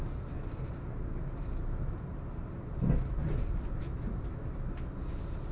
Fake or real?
real